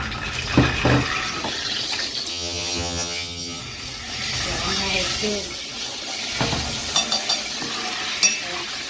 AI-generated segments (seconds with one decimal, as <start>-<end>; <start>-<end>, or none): 2.3-3.6